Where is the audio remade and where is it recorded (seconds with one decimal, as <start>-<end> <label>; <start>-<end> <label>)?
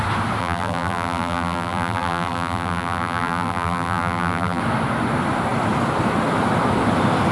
0.0-0.4 recorded; 0.4-4.6 remade; 4.6-7.3 recorded